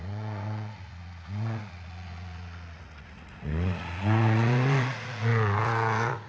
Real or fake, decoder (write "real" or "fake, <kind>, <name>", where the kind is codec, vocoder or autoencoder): fake, vocoder, Vocos